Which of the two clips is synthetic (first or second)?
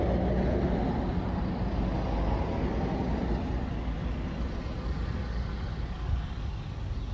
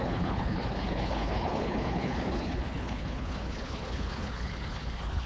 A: second